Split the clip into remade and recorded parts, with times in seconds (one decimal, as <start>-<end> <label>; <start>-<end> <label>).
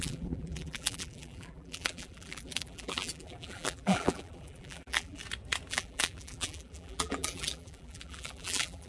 0.0-5.2 remade; 5.2-5.7 recorded; 5.7-8.9 remade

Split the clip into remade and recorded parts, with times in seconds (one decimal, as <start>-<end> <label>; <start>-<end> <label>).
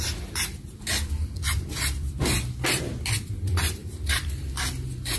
0.0-5.2 remade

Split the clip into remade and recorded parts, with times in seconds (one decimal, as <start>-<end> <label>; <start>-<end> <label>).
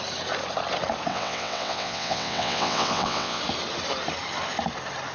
0.0-1.1 recorded; 1.1-3.4 remade; 3.4-5.1 recorded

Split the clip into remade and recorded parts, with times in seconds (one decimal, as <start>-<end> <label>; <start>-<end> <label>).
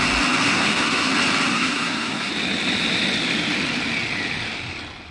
0.0-0.5 recorded; 0.5-1.1 remade; 1.1-1.5 recorded; 1.5-2.3 remade; 2.3-5.1 recorded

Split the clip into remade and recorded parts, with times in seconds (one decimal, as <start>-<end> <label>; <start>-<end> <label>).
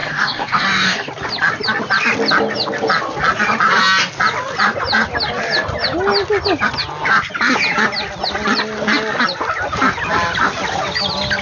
0.0-1.1 remade; 1.1-11.4 recorded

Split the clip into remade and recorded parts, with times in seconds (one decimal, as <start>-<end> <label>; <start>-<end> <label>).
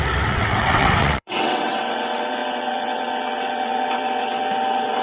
0.0-5.0 remade